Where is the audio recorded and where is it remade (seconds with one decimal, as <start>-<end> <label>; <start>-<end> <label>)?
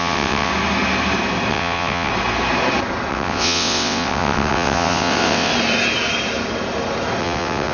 0.0-0.5 remade; 0.5-1.5 recorded; 1.5-2.1 remade; 2.1-3.1 recorded; 3.1-5.5 remade; 5.5-7.2 recorded; 7.2-7.7 remade